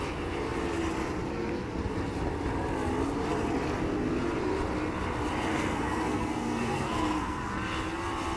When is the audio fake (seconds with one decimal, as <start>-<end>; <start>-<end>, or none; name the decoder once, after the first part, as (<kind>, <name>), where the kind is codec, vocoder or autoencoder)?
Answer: 5.5-7.5 (codec, SNAC)